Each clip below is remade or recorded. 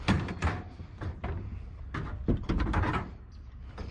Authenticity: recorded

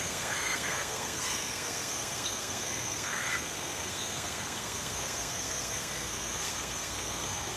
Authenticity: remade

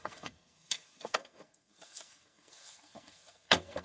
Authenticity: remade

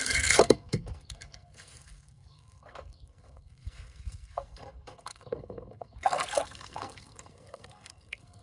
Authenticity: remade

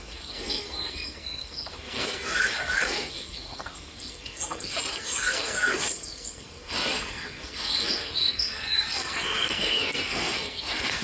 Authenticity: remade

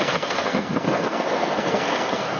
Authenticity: remade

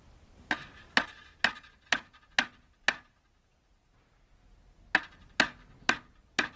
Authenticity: recorded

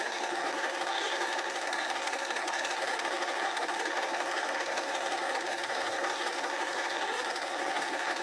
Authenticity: remade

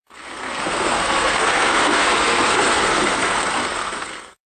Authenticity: remade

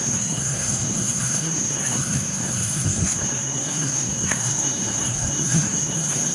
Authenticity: remade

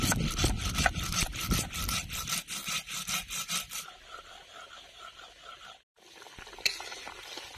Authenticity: recorded